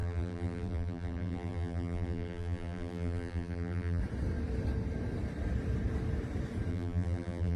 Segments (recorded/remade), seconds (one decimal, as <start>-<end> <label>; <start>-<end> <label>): 0.0-4.0 remade; 4.0-6.7 recorded; 6.7-7.6 remade